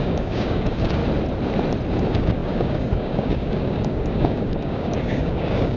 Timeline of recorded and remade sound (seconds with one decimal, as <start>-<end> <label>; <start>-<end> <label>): 0.0-1.0 remade; 1.0-1.9 recorded; 1.9-5.8 remade